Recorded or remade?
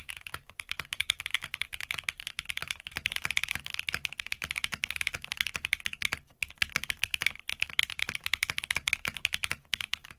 remade